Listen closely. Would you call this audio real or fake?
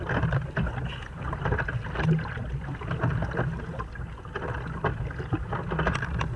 real